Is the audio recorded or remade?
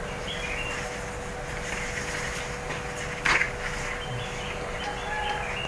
recorded